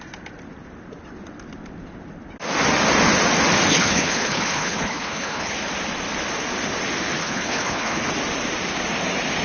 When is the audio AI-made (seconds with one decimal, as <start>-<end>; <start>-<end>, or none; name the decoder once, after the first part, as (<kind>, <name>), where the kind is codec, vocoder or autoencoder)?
3.7-5.5 (codec, HILCodec); 7.2-8.1